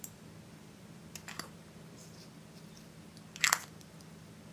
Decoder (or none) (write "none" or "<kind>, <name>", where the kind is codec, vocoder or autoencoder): vocoder, BigVGAN v2